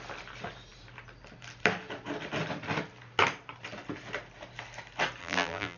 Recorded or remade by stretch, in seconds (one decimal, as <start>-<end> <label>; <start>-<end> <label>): 0.0-5.2 recorded; 5.2-5.8 remade